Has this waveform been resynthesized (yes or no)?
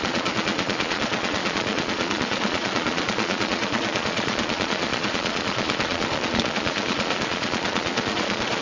yes